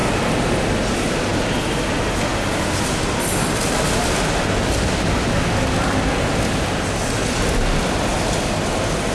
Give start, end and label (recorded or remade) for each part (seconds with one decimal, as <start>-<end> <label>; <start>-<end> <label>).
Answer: 0.0-9.1 recorded